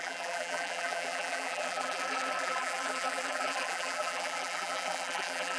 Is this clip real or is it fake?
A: fake